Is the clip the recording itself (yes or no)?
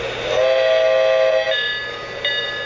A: yes